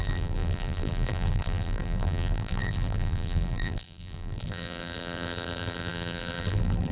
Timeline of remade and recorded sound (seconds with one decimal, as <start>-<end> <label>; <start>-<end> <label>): 0.0-6.9 remade